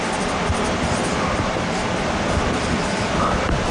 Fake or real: real